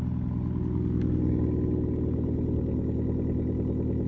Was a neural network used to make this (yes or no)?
no